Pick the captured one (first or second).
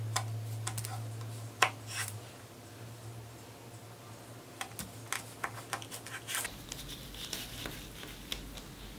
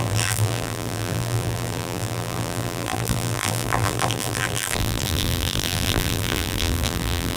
first